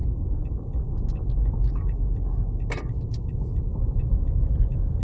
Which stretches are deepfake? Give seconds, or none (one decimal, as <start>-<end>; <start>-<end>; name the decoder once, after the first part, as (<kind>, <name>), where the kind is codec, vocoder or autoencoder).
3.0-5.0 (vocoder, BigVGAN v2)